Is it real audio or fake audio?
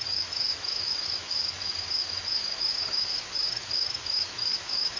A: fake